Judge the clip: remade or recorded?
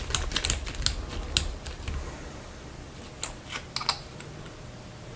recorded